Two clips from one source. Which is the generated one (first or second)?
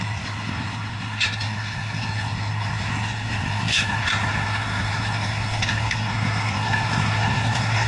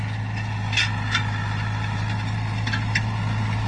first